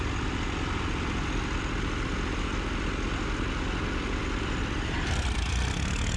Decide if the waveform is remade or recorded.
recorded